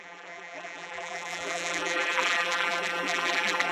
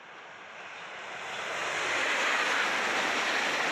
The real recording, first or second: second